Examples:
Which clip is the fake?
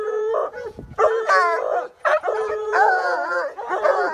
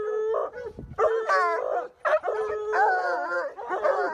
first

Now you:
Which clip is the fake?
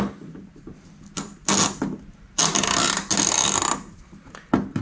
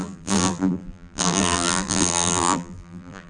second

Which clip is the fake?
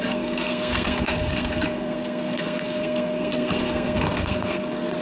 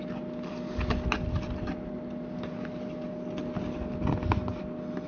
first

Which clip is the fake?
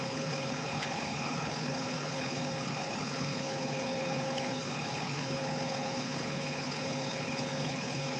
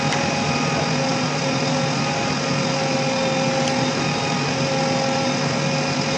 first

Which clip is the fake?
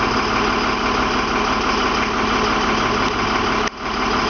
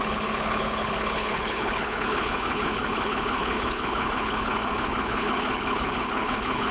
second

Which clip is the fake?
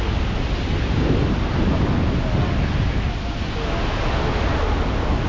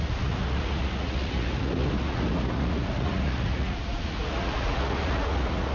second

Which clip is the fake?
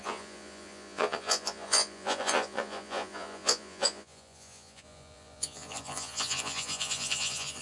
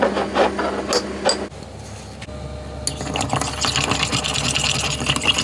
first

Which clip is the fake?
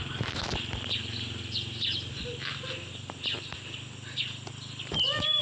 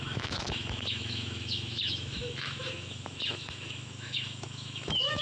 second